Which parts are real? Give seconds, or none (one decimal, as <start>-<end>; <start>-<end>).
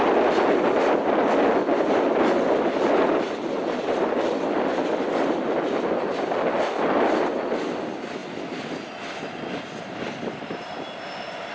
0.0-11.5